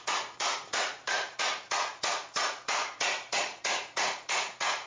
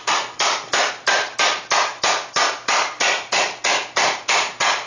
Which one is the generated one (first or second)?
first